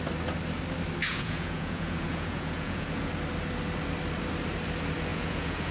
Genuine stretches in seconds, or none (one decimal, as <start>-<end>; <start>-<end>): 0.0-1.0; 3.1-5.1